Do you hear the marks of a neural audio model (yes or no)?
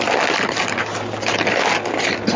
no